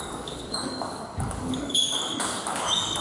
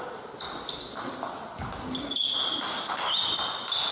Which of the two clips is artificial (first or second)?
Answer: first